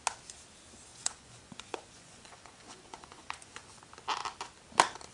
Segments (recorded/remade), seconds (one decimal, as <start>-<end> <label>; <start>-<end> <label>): 0.0-0.9 recorded; 0.9-3.8 remade; 3.8-5.1 recorded

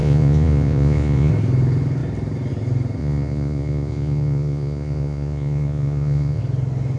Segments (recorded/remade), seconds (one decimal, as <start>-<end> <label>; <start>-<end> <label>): 0.0-1.3 remade; 1.3-3.0 recorded; 3.0-6.4 remade; 6.4-7.0 recorded

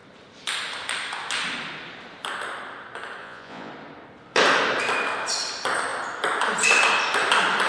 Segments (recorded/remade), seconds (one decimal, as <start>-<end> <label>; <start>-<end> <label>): 0.0-3.2 recorded; 3.2-3.7 remade; 3.7-7.7 recorded

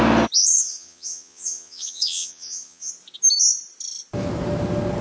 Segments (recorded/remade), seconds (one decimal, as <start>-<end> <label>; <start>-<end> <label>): 0.0-0.4 recorded; 0.4-2.9 remade; 2.9-5.0 recorded

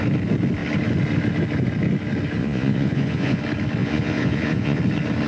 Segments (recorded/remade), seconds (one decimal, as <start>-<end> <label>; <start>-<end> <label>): 0.0-2.4 recorded; 2.4-3.4 remade; 3.4-3.8 recorded; 3.8-4.8 remade; 4.8-5.3 recorded

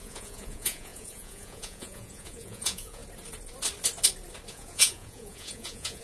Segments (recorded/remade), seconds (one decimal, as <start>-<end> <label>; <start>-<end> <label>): 0.0-3.0 remade; 3.0-4.5 recorded; 4.5-6.0 remade